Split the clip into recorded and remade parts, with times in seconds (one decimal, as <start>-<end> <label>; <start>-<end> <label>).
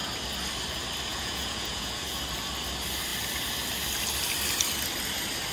0.0-1.1 recorded; 1.1-2.2 remade; 2.2-5.5 recorded